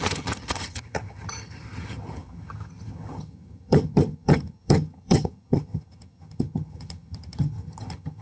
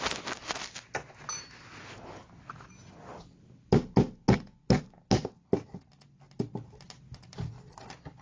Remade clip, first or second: first